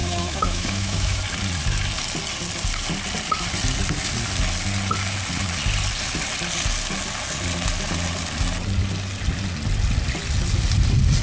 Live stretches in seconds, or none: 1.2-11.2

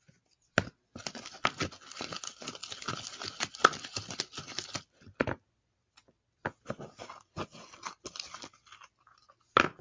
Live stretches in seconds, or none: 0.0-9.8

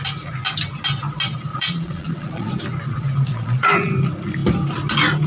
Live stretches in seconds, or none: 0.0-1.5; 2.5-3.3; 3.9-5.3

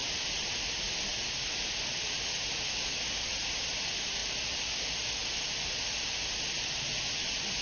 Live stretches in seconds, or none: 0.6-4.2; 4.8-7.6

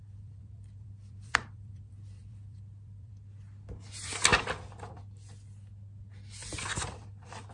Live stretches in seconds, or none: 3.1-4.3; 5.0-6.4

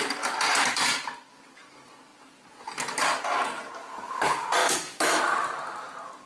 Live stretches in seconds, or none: 0.0-4.6; 5.2-6.3